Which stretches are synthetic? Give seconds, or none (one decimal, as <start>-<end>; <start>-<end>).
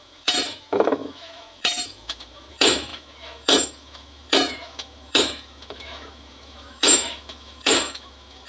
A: 0.0-8.5